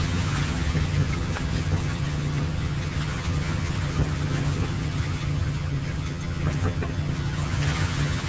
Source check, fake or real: fake